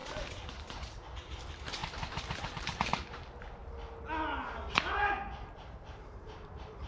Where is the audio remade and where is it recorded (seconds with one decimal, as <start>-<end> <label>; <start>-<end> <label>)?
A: 0.0-1.8 remade; 1.8-2.3 recorded; 2.3-3.6 remade; 3.6-5.9 recorded; 5.9-6.9 remade